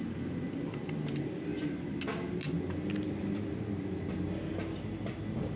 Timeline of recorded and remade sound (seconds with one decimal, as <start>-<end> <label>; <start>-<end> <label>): 0.0-5.6 recorded